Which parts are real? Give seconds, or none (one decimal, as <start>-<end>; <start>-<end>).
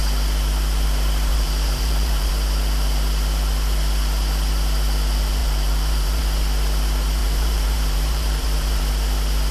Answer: 0.0-1.3; 2.3-5.4; 6.2-7.2; 8.8-9.5